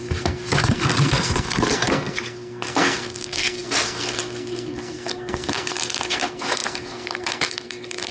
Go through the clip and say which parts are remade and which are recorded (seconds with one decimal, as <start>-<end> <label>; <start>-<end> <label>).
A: 0.0-8.1 remade